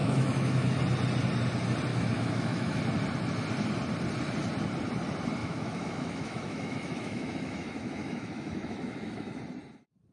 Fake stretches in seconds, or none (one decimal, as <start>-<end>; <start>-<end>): 0.0-0.8; 1.9-2.8; 5.4-9.4